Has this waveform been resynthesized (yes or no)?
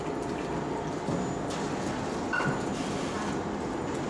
no